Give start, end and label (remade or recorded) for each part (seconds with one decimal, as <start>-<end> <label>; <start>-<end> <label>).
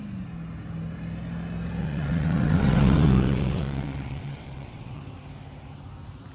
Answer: 0.0-1.8 recorded; 1.8-5.0 remade; 5.0-6.3 recorded